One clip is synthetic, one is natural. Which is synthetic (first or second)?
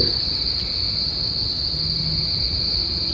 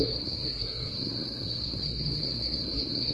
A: second